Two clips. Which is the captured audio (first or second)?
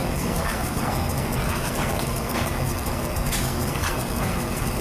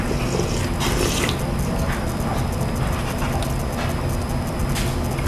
second